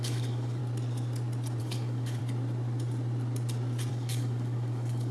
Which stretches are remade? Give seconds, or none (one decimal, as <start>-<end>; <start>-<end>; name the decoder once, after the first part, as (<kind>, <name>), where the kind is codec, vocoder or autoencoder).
0.0-0.6 (codec, DAC); 1.6-2.2; 3.9-5.1